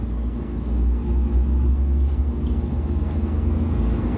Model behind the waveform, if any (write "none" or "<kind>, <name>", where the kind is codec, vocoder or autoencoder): codec, SNAC